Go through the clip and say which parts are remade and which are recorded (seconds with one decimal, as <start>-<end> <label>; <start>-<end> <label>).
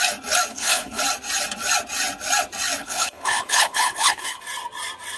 0.0-0.5 recorded; 0.5-1.0 remade; 1.0-2.8 recorded; 2.8-4.4 remade; 4.4-5.2 recorded